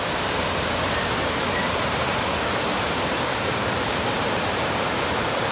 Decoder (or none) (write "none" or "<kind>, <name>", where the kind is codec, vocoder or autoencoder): vocoder, BigVGAN v2